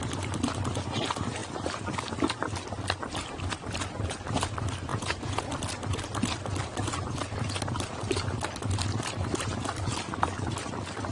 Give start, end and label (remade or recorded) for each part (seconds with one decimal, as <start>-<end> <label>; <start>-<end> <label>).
0.0-4.9 recorded; 4.9-5.5 remade; 5.5-11.1 recorded